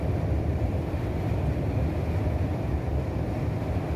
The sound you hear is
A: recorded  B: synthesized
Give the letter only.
B